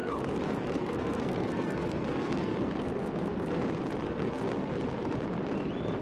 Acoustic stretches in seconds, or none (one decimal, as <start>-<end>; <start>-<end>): 3.6-4.0; 4.7-6.0